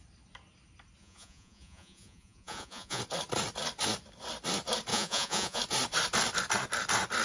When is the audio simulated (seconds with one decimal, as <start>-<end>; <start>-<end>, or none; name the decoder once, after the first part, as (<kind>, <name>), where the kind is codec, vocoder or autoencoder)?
1.0-3.0 (vocoder, Vocos); 4.9-5.6